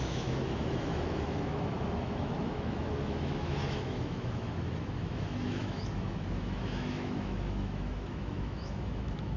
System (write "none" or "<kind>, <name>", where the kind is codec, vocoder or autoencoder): autoencoder, DAC-VAE